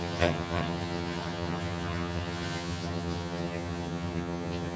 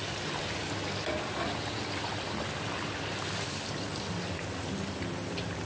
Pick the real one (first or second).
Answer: second